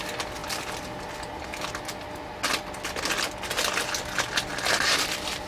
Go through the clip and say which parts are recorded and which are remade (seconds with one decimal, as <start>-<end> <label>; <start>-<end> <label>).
0.0-5.5 recorded

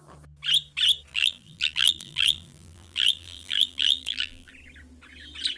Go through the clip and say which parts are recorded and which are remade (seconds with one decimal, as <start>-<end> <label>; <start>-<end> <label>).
0.0-1.1 recorded; 1.1-4.5 remade; 4.5-5.6 recorded

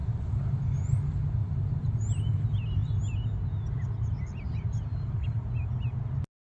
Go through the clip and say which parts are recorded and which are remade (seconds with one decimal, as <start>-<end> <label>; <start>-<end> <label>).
0.0-0.6 remade; 0.6-1.4 recorded; 1.4-2.1 remade; 2.1-4.9 recorded; 4.9-5.5 remade; 5.5-6.5 recorded

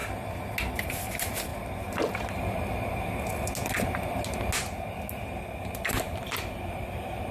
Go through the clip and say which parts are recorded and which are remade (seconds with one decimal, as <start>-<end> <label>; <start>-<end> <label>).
0.0-0.7 recorded; 0.7-1.5 remade; 1.5-5.9 recorded; 5.9-7.3 remade

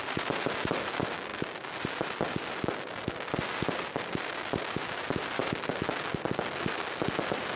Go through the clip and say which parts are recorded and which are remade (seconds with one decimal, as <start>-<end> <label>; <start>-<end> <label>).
0.0-7.6 recorded

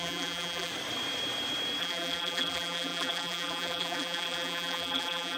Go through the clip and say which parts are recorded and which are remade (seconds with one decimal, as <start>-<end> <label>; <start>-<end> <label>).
0.0-0.7 remade; 0.7-1.8 recorded; 1.8-5.4 remade

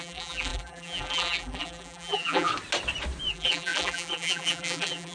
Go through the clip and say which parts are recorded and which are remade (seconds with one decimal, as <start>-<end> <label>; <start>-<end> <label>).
0.0-2.5 remade; 2.5-3.3 recorded; 3.3-5.1 remade